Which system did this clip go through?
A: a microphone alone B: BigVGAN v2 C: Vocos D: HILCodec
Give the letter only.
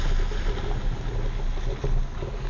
A